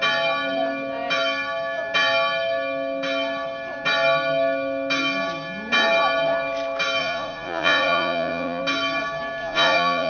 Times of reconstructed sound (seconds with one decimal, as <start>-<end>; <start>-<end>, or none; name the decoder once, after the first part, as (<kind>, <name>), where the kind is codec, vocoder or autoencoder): 7.0-8.6 (vocoder, Vocos); 9.4-10.1